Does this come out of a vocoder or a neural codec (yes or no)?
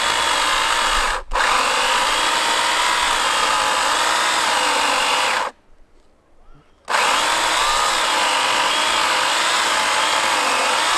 no